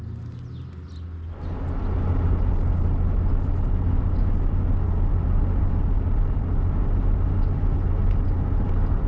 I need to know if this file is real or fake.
real